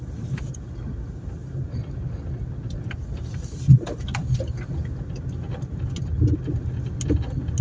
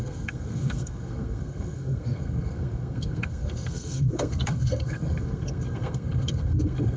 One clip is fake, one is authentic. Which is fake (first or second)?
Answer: second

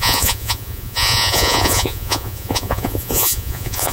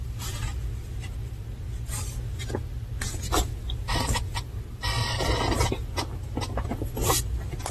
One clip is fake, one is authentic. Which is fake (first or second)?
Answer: first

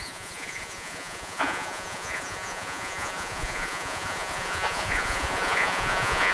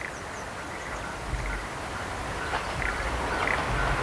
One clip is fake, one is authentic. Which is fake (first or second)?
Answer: first